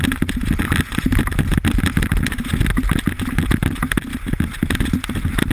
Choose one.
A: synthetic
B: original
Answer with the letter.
B